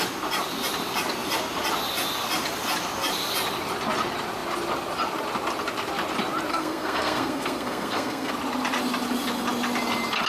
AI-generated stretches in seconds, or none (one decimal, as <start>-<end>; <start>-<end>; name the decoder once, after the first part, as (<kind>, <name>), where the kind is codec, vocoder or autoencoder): 6.5-8.3 (codec, SNAC)